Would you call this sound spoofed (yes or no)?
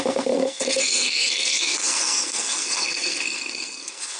yes